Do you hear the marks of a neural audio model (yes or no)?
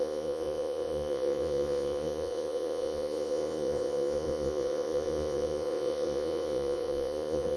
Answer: yes